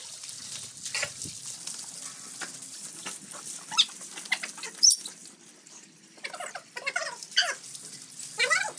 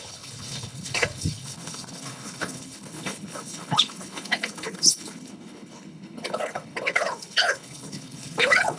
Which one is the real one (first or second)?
first